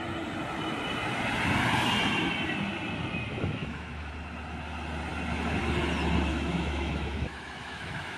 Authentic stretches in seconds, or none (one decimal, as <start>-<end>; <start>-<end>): 0.0-3.3; 4.1-6.3